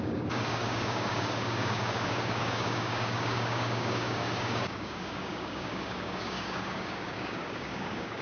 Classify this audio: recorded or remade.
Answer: remade